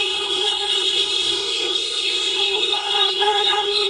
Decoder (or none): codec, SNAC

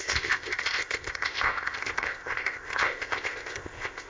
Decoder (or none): codec, ZipCodec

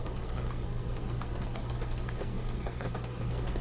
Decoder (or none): codec, SNAC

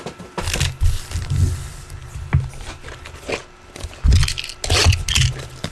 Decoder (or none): none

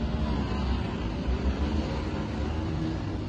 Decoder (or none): none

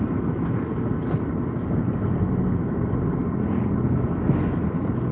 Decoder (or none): none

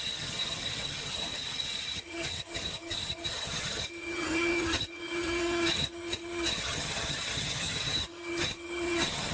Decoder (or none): vocoder, HiFi-GAN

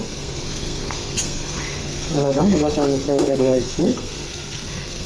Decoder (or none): codec, SNAC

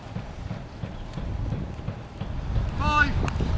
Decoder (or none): none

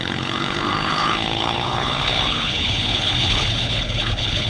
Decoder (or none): codec, HILCodec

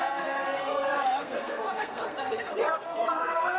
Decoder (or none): codec, SNAC